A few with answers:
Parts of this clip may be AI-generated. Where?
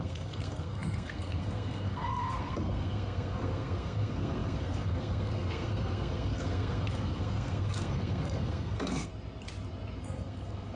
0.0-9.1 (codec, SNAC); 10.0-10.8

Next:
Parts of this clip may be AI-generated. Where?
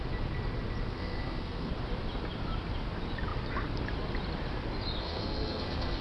0.9-1.7 (codec, SNAC); 5.0-6.0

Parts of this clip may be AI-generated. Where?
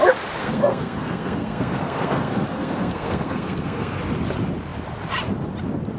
0.4-4.0 (codec, SNAC)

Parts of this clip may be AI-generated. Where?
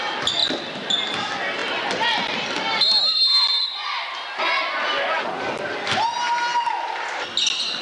none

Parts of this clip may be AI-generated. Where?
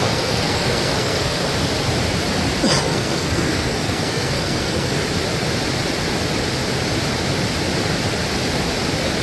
0.0-1.4 (codec, SNAC); 2.8-5.0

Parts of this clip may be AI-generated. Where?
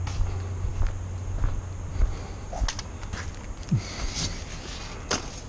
none